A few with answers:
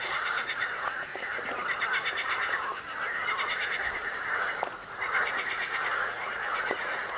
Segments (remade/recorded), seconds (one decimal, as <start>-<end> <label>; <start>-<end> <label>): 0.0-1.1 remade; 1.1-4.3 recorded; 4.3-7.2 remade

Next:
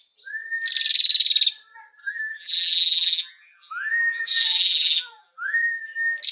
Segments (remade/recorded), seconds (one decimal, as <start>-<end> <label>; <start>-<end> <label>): 0.0-2.0 recorded; 2.0-5.8 remade; 5.8-6.3 recorded

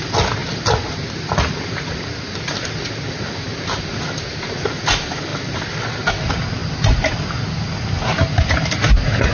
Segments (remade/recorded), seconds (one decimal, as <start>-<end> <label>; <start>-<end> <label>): 0.0-9.3 recorded